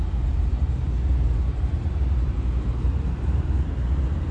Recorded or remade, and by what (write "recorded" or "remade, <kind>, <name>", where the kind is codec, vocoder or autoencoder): remade, vocoder, BigVGAN v2